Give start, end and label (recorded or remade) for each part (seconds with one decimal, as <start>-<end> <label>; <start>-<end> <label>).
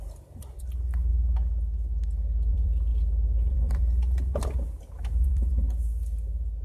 0.0-6.6 remade